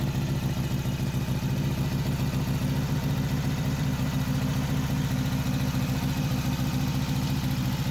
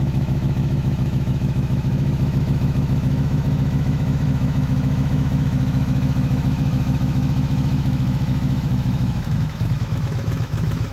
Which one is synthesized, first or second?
second